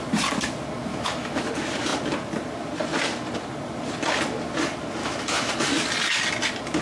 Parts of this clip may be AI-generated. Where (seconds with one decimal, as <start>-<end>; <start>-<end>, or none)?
0.9-1.5; 5.0-5.5